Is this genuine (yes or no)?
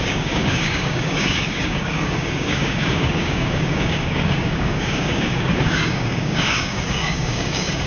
no